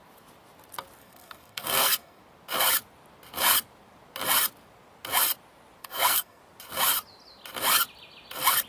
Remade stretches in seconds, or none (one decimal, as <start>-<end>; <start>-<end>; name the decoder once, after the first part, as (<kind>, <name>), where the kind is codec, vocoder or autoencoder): 1.0-2.2 (codec, SNAC); 5.8-6.4